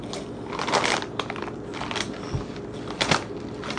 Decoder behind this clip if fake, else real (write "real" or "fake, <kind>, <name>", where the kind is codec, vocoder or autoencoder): real